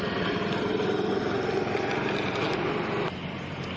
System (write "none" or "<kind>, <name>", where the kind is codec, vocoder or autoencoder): none